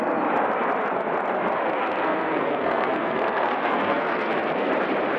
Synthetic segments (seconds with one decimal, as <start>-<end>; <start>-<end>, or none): 1.6-4.7